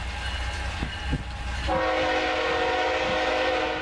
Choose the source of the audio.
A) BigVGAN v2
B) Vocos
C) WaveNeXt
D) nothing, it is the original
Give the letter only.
D